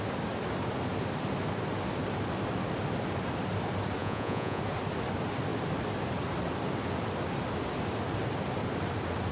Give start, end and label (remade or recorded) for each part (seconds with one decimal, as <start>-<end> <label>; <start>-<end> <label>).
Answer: 0.0-4.0 recorded; 4.0-4.6 remade; 4.6-9.3 recorded